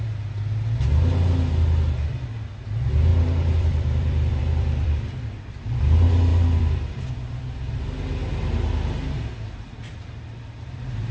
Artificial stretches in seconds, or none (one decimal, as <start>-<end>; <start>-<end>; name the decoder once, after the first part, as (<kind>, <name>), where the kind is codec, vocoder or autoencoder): 3.1-5.8 (vocoder, BigVGAN v2); 6.3-7.8